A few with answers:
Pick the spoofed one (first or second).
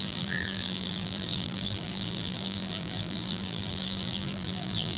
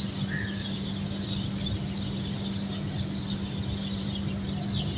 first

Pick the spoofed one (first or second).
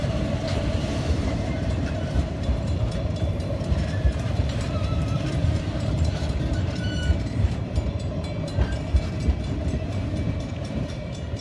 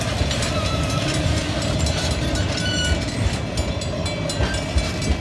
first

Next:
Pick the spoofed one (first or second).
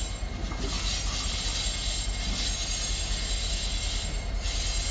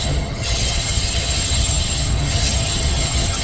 second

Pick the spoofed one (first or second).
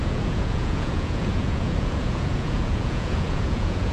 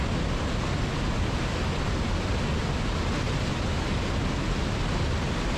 first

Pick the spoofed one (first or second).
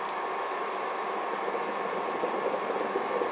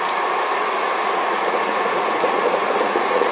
second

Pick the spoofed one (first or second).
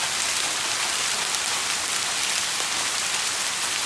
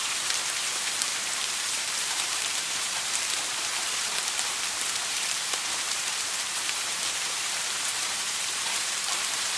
second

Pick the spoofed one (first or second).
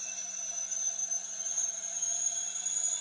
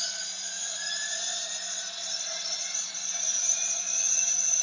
second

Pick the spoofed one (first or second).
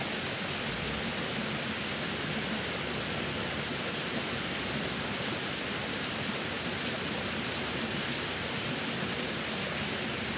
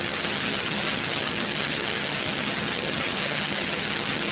second